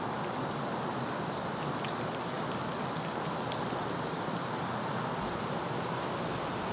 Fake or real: real